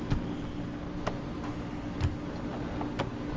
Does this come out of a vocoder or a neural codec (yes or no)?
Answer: no